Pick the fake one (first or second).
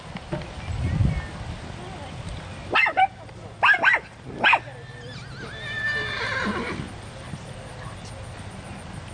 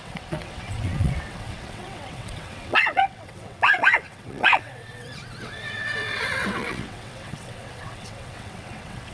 second